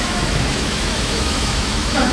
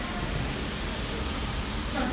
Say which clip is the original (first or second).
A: second